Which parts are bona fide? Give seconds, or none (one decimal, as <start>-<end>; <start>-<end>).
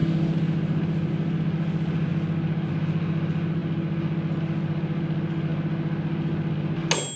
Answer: 0.0-7.2